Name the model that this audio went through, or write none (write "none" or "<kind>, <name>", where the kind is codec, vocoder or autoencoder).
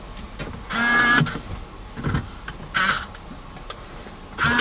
none